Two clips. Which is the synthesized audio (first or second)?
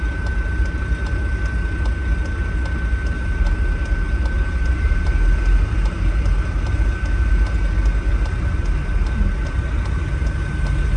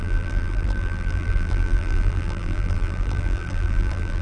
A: second